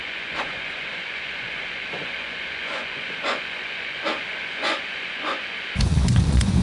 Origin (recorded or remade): remade